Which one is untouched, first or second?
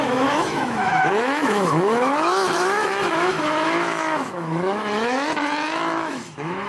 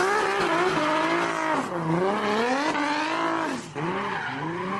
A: second